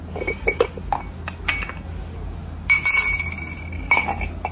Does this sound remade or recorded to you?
recorded